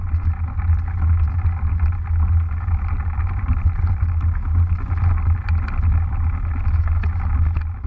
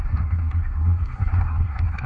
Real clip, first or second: first